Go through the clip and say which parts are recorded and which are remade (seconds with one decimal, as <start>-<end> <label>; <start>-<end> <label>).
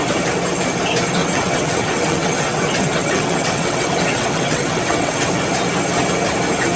0.0-1.2 recorded; 1.2-5.3 remade; 5.3-6.8 recorded